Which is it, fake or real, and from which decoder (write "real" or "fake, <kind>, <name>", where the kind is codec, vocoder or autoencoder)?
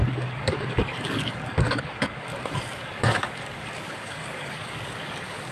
fake, codec, DAC